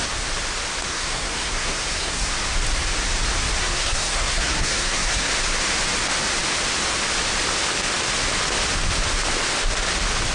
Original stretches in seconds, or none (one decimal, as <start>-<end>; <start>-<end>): 0.0-0.9; 2.3-3.6; 5.3-10.3